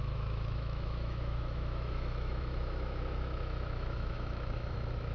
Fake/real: fake